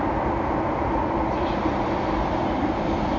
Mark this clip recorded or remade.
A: recorded